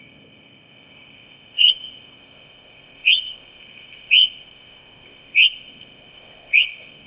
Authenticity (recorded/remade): remade